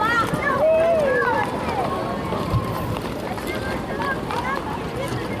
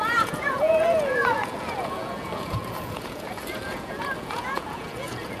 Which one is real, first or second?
first